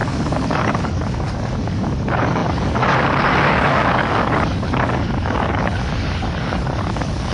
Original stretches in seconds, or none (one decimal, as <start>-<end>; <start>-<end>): none